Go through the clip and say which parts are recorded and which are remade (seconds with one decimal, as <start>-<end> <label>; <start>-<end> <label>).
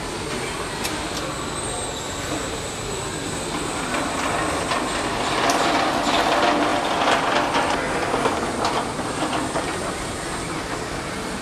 0.0-6.7 recorded; 6.7-11.4 remade